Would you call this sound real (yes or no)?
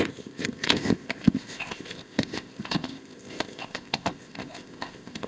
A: no